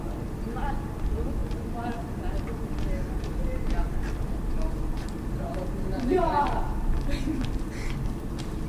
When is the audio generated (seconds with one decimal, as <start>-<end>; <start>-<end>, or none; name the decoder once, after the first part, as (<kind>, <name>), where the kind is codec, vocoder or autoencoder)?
none